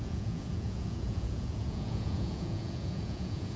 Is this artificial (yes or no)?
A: yes